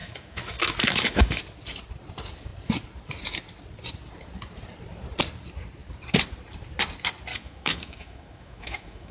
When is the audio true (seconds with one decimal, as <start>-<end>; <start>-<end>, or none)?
1.4-7.3